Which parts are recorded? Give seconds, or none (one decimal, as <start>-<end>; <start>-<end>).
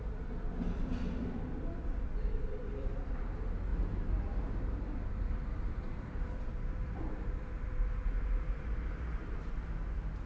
0.0-2.2; 3.1-3.7; 9.0-10.3